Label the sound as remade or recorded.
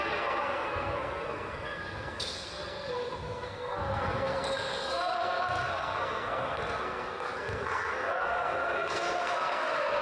remade